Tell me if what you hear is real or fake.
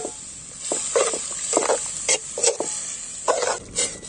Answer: real